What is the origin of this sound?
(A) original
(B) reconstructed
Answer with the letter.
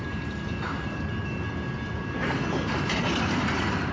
A